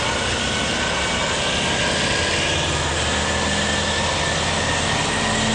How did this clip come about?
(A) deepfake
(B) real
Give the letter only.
B